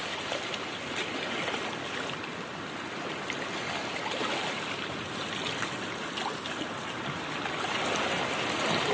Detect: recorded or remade recorded